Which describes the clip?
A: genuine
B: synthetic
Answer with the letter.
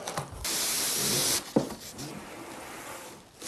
A